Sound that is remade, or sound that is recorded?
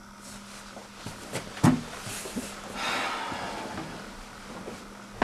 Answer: recorded